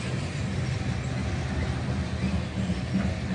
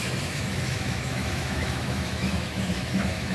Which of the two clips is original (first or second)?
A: first